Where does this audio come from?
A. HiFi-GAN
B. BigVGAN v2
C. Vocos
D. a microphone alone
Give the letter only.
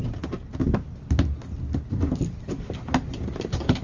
D